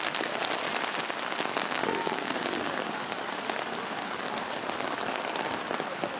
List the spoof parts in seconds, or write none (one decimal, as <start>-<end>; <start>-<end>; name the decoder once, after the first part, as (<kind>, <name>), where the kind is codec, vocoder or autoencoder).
1.5-5.2 (codec, DAC)